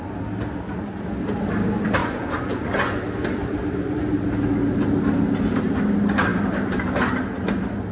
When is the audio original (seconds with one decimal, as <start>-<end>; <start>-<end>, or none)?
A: 0.0-2.0; 2.9-7.9